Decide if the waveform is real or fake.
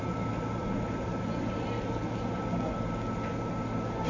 real